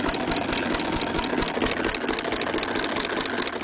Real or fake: real